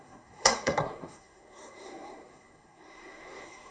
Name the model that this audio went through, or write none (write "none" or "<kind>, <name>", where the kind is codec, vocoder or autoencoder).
codec, SNAC